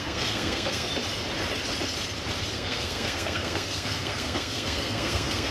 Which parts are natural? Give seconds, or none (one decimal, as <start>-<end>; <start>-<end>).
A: 0.9-2.5